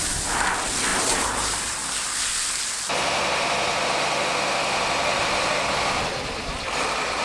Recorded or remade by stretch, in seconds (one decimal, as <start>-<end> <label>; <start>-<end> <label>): 0.0-0.9 recorded; 0.9-2.1 remade; 2.1-7.2 recorded